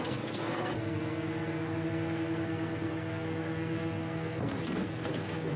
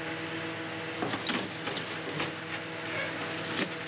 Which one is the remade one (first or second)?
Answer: first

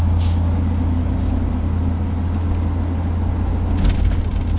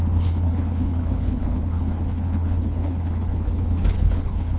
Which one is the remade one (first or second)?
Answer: second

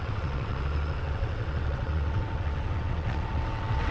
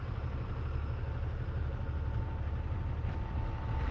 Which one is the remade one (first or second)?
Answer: first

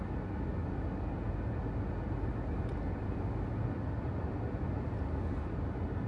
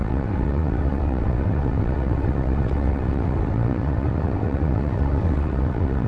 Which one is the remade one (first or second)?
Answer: second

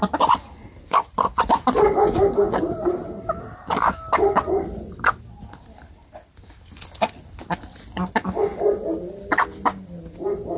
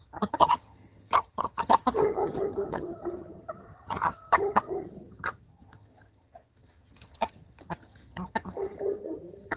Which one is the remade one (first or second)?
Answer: second